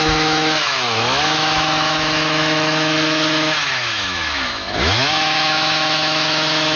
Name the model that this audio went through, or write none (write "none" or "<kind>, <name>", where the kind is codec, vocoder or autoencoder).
autoencoder, DAC-VAE